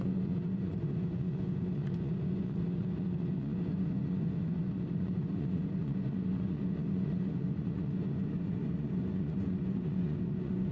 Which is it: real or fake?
fake